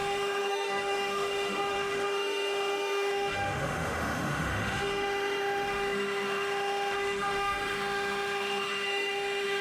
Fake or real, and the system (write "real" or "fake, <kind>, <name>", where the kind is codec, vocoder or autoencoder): fake, autoencoder, DAC-VAE